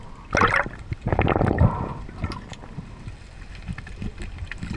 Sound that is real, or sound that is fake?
real